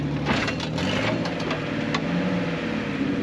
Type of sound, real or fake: real